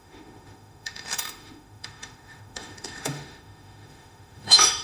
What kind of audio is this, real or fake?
fake